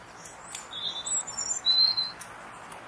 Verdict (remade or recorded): recorded